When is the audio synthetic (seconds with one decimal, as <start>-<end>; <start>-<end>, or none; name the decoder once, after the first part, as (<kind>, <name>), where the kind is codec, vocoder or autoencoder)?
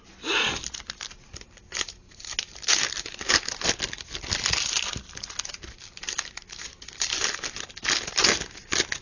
none